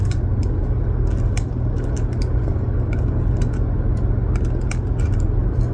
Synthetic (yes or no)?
no